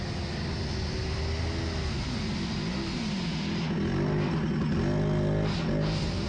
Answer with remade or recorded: recorded